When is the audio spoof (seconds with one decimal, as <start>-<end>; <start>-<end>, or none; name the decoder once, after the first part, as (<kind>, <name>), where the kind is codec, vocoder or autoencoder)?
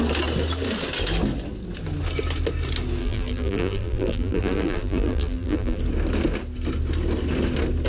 3.0-5.8 (vocoder, BigVGAN v2)